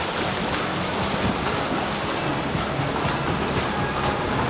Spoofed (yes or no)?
no